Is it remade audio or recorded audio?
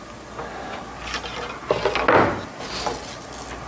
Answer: recorded